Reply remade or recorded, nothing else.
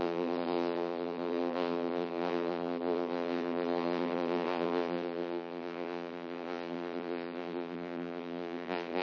remade